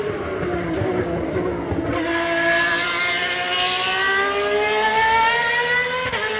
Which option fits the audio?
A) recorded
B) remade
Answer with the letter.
A